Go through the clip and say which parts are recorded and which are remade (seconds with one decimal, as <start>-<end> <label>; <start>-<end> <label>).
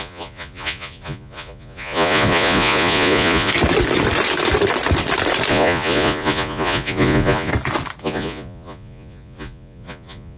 0.0-3.5 remade; 3.5-5.5 recorded; 5.5-7.5 remade; 7.5-8.0 recorded; 8.0-10.4 remade